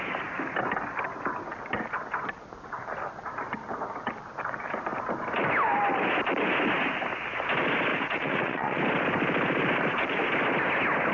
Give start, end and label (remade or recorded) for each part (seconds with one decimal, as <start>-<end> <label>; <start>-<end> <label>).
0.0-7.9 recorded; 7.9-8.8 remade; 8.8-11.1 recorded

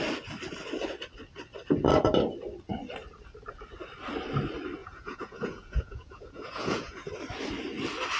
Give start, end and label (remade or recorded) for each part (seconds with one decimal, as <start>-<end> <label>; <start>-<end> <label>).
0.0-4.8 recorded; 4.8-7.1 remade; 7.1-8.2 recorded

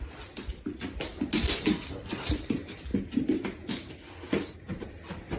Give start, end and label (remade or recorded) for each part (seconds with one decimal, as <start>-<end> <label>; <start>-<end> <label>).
0.0-1.1 remade; 1.1-2.1 recorded; 2.1-2.9 remade; 2.9-3.9 recorded; 3.9-5.4 remade

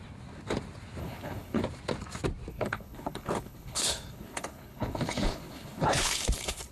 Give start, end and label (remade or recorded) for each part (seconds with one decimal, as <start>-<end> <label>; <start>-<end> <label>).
0.0-1.0 recorded; 1.0-1.6 remade; 1.6-2.5 recorded; 2.5-6.7 remade